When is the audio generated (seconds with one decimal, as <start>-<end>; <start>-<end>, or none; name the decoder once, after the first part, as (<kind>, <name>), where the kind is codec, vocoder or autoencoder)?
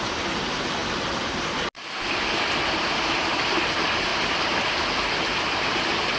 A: none